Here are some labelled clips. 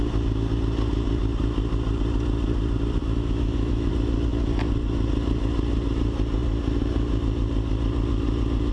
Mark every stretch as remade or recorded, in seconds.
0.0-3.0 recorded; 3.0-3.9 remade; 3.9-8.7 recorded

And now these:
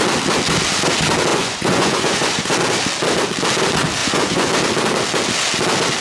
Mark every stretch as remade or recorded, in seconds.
0.0-1.3 recorded; 1.3-2.5 remade; 2.5-4.0 recorded; 4.0-4.5 remade; 4.5-6.0 recorded